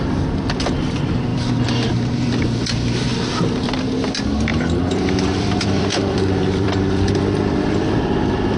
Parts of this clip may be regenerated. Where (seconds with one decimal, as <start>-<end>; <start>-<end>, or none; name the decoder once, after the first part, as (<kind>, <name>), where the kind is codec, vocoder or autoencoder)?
1.3-1.9 (vocoder, BigVGAN v2); 3.1-3.7; 4.5-8.6